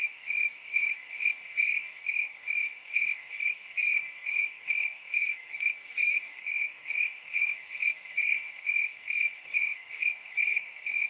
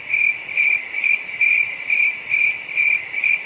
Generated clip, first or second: first